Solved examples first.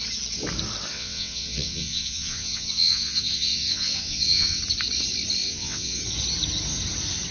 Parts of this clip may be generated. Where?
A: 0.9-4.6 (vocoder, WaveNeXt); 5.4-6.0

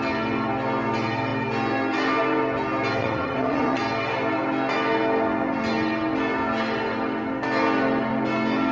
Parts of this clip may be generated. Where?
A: 3.0-3.8 (vocoder, WaveNeXt)

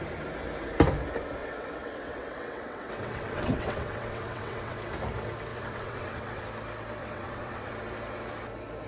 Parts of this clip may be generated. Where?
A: 1.4-4.8 (vocoder, WaveNeXt); 5.5-6.4; 7.0-7.7